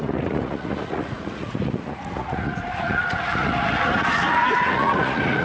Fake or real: fake